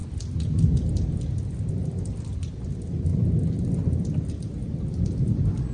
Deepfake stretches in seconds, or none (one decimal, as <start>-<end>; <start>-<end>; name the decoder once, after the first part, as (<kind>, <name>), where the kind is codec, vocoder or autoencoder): none